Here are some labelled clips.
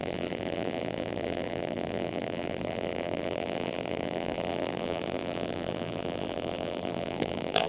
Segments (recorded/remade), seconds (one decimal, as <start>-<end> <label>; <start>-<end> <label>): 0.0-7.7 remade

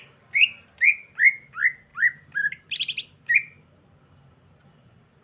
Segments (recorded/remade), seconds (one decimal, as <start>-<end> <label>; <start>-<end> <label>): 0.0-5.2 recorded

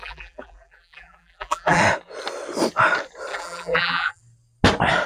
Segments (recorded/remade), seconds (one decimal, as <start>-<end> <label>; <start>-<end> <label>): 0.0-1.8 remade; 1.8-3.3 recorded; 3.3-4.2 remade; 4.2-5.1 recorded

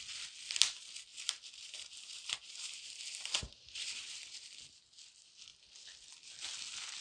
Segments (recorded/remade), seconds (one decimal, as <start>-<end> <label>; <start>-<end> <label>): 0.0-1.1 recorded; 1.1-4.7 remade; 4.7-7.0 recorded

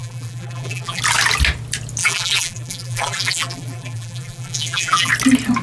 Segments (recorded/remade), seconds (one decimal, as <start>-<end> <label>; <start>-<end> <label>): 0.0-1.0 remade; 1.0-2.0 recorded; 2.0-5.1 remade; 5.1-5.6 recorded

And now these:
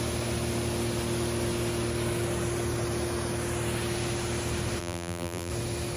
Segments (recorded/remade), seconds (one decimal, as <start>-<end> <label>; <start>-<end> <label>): 0.0-4.8 recorded; 4.8-5.5 remade; 5.5-6.0 recorded

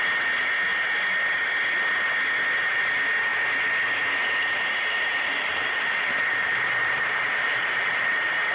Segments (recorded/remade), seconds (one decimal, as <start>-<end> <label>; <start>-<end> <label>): 0.0-5.1 recorded; 5.1-8.1 remade; 8.1-8.5 recorded